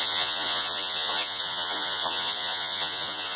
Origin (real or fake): fake